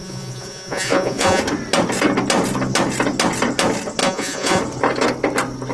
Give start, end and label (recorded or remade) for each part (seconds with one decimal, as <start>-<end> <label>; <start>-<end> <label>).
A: 0.0-1.4 remade; 1.4-4.0 recorded; 4.0-4.6 remade; 4.6-5.7 recorded